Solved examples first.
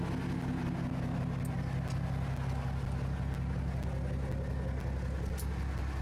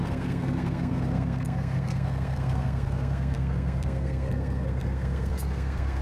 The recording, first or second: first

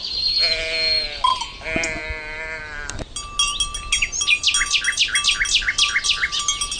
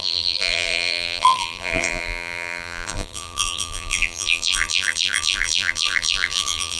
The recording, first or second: first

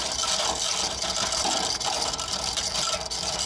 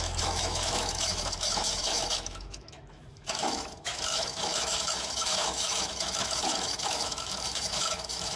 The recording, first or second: first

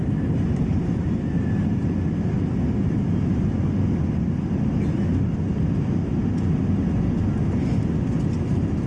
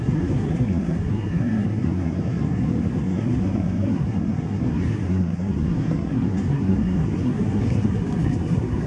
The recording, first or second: first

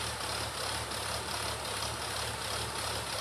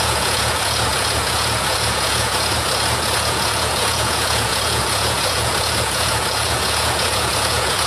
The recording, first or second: first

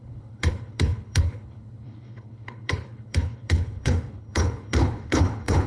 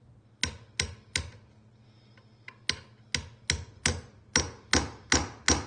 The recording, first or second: second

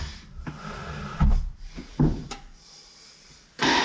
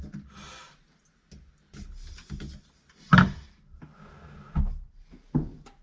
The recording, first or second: second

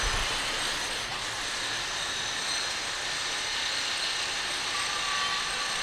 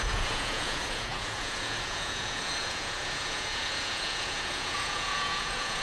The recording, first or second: first